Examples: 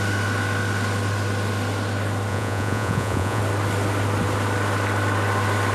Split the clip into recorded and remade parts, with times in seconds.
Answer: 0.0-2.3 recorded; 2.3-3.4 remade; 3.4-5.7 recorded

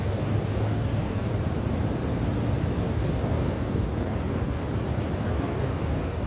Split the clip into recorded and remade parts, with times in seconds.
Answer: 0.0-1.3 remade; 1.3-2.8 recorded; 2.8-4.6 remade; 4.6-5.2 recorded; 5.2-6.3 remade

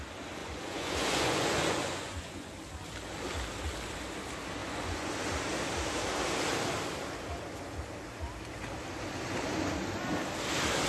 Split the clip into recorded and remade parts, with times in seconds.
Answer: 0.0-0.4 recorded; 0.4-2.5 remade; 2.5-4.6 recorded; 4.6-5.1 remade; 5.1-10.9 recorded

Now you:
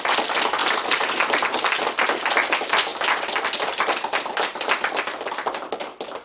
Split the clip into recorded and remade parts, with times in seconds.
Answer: 0.0-0.6 recorded; 0.6-1.4 remade; 1.4-6.2 recorded